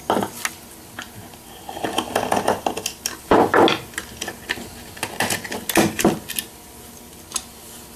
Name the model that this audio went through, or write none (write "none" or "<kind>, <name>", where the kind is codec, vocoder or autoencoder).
none